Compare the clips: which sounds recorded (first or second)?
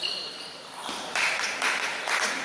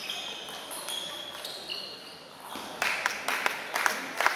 second